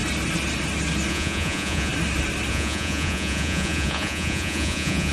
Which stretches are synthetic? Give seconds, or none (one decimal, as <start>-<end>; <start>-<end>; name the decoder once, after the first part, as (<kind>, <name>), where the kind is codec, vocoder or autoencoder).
1.1-1.9 (vocoder, Vocos); 2.5-5.1